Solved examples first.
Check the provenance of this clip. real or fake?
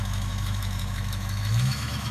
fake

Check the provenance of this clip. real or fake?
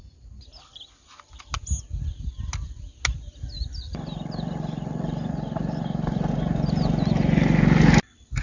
real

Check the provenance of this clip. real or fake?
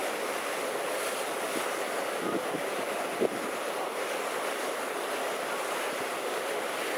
real